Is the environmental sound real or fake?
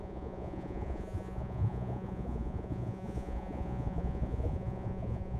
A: fake